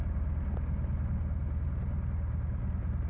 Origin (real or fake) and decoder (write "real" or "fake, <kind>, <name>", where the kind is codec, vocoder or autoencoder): real